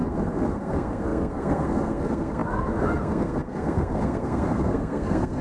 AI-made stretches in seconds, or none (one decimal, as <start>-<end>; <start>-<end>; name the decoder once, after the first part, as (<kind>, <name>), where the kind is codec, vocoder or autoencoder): 0.0-5.4 (codec, SNAC)